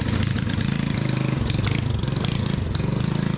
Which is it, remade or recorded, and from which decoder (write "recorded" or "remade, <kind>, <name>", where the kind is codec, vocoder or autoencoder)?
remade, vocoder, BigVGAN v2